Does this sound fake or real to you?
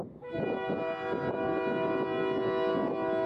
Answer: real